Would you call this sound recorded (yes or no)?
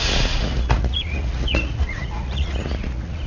no